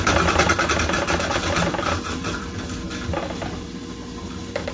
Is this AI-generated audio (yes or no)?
no